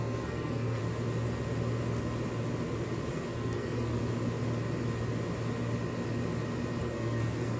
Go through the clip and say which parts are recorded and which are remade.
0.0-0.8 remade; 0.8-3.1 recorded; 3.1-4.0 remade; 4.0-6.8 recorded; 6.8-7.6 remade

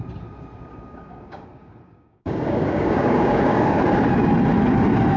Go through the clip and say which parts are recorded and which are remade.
0.0-0.7 recorded; 0.7-3.8 remade; 3.8-5.2 recorded

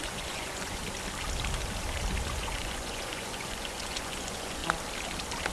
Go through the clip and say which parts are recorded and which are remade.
0.0-0.8 remade; 0.8-2.3 recorded; 2.3-4.6 remade; 4.6-5.5 recorded

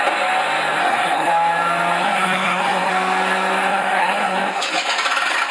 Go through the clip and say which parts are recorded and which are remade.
0.0-0.8 recorded; 0.8-1.3 remade; 1.3-2.0 recorded; 2.0-2.9 remade; 2.9-3.7 recorded; 3.7-4.7 remade; 4.7-5.5 recorded

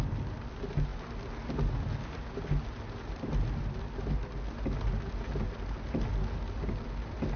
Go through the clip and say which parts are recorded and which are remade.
0.0-7.4 recorded

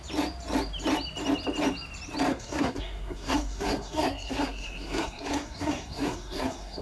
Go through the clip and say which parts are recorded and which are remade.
0.0-2.3 recorded; 2.3-6.8 remade

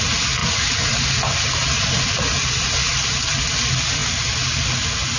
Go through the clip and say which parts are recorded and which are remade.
0.0-5.2 recorded